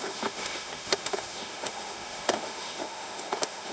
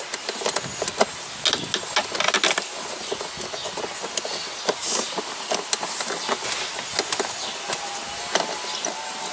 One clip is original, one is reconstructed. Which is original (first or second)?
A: second